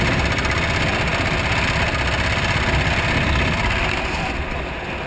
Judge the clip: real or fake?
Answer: real